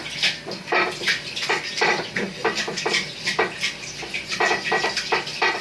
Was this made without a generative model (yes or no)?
yes